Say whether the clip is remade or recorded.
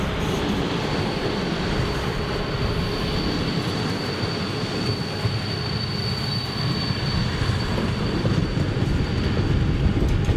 recorded